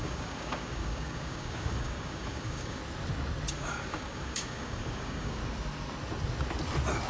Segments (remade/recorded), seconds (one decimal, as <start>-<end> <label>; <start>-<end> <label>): 0.0-2.8 remade; 2.8-3.5 recorded; 3.5-5.4 remade; 5.4-7.1 recorded